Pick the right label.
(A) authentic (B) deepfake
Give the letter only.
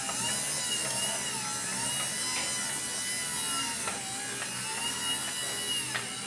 A